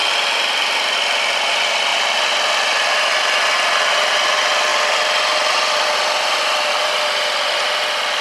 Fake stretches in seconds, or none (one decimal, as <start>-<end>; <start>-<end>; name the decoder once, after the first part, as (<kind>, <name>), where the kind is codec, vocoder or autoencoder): none